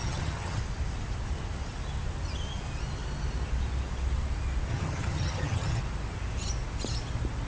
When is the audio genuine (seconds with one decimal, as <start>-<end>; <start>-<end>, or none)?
0.6-4.7; 5.8-7.5

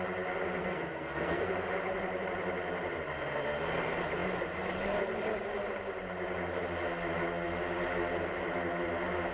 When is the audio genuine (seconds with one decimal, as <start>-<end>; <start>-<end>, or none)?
0.0-0.6; 1.5-9.3

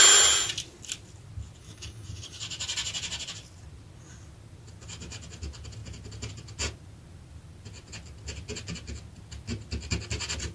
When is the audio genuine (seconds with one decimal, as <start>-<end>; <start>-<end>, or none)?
0.0-1.6; 2.4-10.5

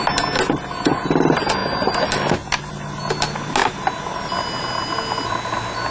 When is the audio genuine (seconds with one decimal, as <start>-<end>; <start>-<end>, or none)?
0.0-5.9

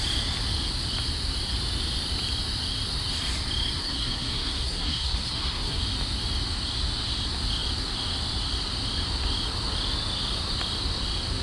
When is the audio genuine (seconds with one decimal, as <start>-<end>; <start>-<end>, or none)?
0.0-3.8; 5.8-11.4

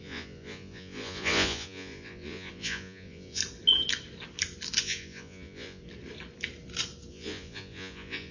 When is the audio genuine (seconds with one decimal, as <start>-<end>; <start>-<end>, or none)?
3.4-4.8; 5.8-7.1

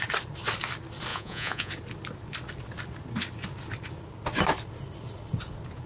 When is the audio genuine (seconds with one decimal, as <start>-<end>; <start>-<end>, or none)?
0.0-1.1; 1.7-5.9